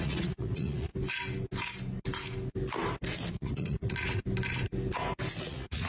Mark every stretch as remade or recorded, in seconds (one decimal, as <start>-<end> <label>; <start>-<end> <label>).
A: 0.0-0.9 remade; 0.9-3.3 recorded; 3.3-4.2 remade; 4.2-5.4 recorded; 5.4-5.9 remade